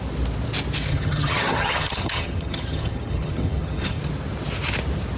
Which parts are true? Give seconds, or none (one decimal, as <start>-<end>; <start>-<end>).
0.0-0.9; 4.0-5.2